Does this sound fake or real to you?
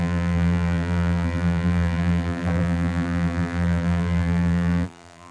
fake